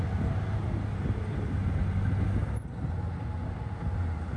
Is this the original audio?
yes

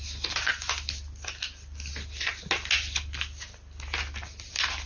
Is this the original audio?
yes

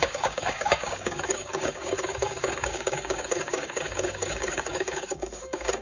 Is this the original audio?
no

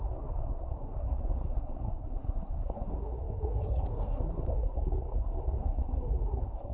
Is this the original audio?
no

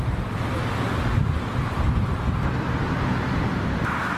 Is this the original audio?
yes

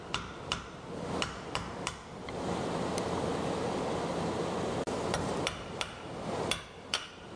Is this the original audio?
yes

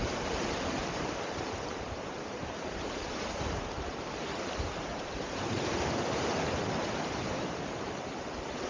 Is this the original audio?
no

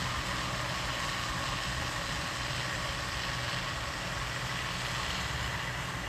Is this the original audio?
yes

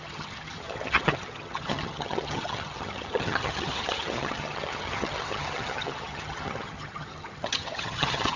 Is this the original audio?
no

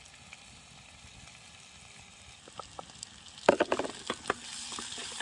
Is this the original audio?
yes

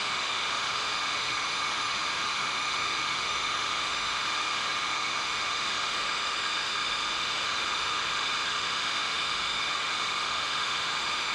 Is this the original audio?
no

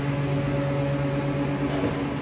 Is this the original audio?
yes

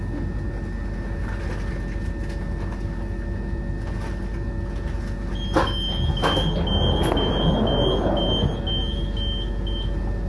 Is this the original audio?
yes